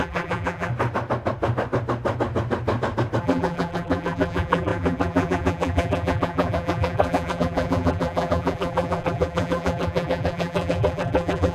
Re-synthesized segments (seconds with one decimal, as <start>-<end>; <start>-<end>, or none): 0.0-0.7; 3.2-11.5